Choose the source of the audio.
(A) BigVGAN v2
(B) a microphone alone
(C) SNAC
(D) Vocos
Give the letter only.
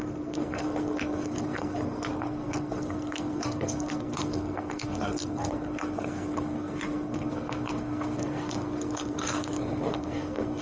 C